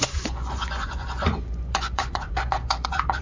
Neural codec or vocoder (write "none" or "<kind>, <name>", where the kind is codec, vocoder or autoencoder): vocoder, Vocos